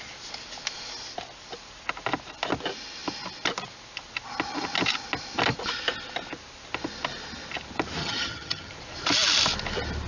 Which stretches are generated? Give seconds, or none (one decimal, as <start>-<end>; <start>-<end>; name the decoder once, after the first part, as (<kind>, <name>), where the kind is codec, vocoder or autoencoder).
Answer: 8.0-8.7 (vocoder, HiFi-GAN)